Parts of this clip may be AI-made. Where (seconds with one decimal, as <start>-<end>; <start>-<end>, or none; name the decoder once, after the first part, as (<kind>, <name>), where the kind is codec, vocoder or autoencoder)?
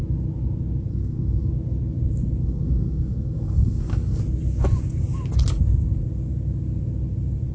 0.9-1.5 (codec, SNAC); 2.4-4.2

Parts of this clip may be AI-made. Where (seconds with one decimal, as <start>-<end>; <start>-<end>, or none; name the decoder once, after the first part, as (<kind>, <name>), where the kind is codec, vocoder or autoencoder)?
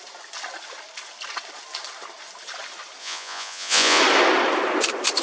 3.0-4.0 (vocoder, Vocos)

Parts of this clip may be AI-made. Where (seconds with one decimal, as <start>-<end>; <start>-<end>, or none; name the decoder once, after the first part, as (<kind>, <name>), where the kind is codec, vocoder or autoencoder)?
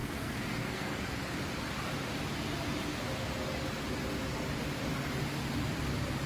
0.0-1.1 (codec, SNAC)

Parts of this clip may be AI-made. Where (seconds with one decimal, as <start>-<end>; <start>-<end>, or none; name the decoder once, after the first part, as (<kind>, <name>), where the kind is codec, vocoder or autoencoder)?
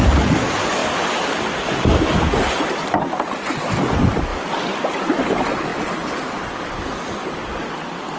none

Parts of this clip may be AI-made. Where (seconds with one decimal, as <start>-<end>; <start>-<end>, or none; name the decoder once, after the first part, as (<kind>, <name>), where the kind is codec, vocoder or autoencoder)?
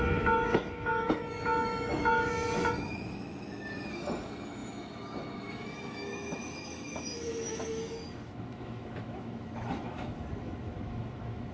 0.0-11.5 (autoencoder, DAC-VAE)